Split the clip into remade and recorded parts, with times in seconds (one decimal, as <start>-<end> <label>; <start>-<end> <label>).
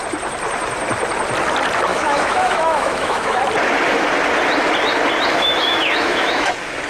0.0-1.9 recorded; 1.9-3.4 remade; 3.4-5.3 recorded; 5.3-6.5 remade; 6.5-6.9 recorded